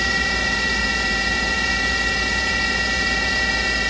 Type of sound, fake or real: fake